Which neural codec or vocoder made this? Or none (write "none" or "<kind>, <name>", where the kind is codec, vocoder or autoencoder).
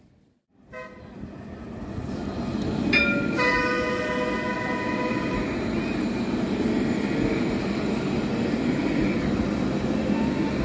none